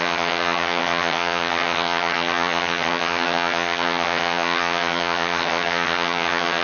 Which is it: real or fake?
fake